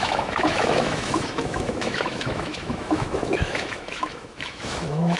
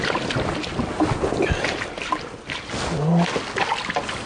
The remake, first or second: first